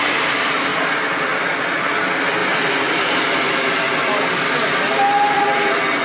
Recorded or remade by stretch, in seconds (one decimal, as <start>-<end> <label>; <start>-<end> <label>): 0.0-6.0 recorded